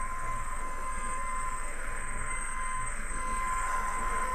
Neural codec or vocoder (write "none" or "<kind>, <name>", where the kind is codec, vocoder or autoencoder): codec, SNAC